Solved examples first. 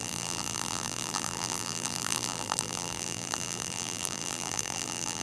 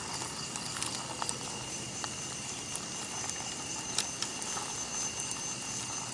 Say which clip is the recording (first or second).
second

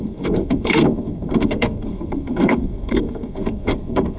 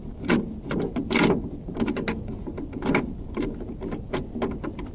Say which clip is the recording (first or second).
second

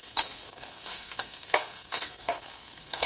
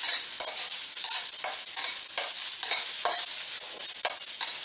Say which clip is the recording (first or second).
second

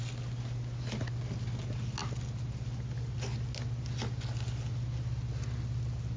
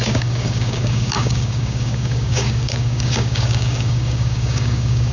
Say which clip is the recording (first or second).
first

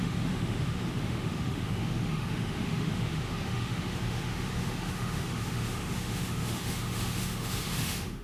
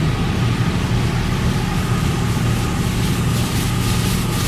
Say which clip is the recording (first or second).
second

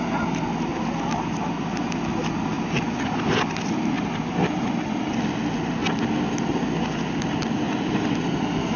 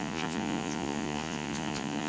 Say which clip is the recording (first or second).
first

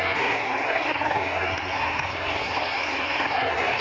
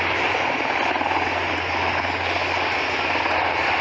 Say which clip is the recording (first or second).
second